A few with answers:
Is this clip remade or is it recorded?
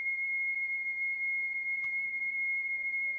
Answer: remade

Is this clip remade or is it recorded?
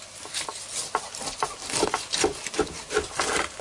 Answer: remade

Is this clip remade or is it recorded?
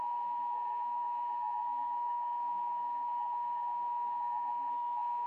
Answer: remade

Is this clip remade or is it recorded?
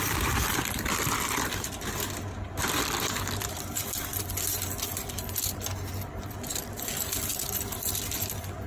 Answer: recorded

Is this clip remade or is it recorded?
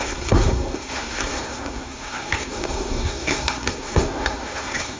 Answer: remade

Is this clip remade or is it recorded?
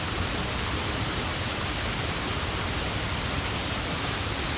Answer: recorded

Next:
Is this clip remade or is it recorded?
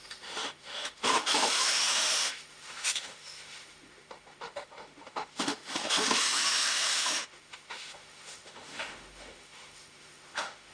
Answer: remade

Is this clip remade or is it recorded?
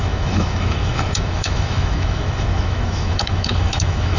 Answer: remade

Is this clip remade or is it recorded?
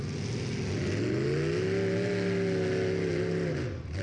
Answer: recorded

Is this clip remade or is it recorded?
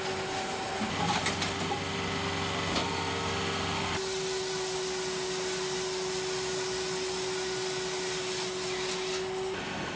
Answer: recorded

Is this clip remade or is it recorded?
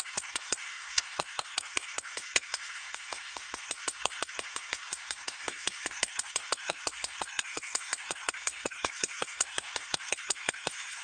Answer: remade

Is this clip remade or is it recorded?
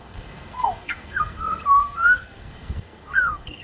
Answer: remade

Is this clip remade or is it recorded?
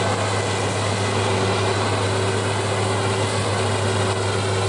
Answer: recorded